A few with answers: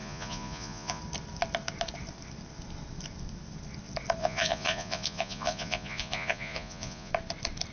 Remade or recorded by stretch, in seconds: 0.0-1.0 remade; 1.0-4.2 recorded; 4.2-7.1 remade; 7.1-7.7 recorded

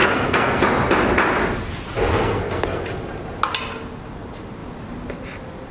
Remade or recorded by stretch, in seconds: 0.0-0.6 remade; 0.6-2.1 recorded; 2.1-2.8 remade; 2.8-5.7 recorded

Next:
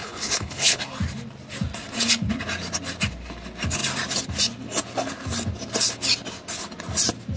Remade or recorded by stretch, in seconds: 0.0-0.8 remade; 0.8-7.4 recorded